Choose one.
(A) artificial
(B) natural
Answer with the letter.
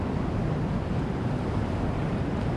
B